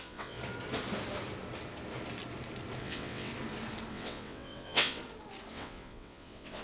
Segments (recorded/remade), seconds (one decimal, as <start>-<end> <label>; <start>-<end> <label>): 0.0-0.4 remade; 0.4-2.8 recorded; 2.8-3.3 remade; 3.3-3.9 recorded; 3.9-5.0 remade; 5.0-5.5 recorded; 5.5-6.6 remade